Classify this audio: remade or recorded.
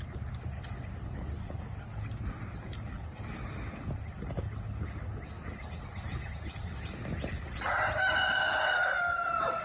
recorded